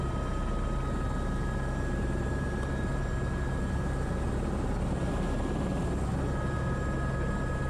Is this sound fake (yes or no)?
no